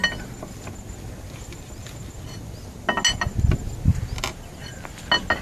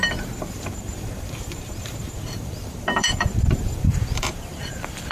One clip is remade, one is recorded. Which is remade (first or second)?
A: second